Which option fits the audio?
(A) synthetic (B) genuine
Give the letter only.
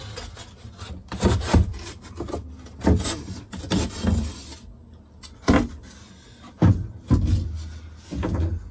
B